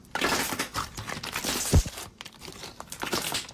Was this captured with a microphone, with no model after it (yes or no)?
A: no